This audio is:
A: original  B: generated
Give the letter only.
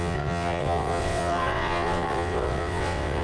B